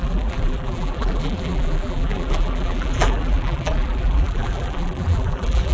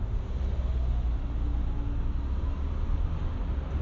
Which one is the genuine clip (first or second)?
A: second